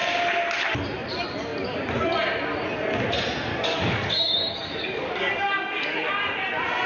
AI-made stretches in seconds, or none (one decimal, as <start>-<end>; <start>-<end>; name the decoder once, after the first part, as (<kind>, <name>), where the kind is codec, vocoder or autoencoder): 3.5-6.1 (codec, DAC)